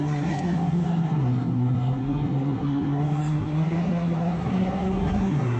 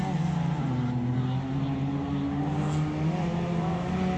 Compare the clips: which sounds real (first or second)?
second